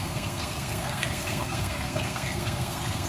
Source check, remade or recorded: remade